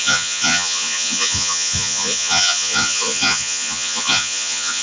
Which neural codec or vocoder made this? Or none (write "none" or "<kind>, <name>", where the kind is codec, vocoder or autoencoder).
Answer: vocoder, Vocos